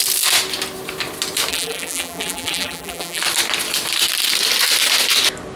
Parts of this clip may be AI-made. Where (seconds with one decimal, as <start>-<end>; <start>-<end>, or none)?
1.5-3.2